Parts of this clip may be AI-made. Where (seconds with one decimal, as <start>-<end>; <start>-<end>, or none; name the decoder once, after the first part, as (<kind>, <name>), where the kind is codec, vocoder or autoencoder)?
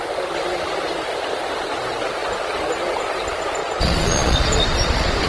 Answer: 3.6-5.3 (vocoder, Vocos)